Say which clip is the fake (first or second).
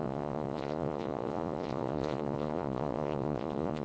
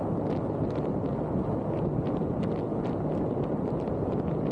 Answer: first